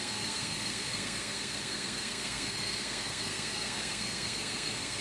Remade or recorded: remade